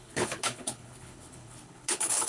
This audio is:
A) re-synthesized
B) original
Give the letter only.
A